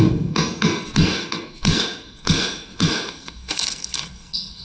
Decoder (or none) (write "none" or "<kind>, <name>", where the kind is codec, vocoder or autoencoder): codec, SNAC